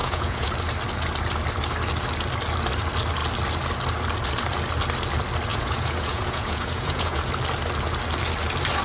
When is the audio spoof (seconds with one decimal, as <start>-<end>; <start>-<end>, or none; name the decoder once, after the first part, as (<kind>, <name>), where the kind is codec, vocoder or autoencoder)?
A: 0.0-0.5 (vocoder, Vocos); 5.5-7.2